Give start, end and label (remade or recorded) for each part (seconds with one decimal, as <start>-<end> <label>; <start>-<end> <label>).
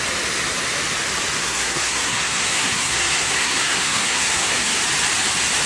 0.0-1.4 recorded; 1.4-4.8 remade; 4.8-5.7 recorded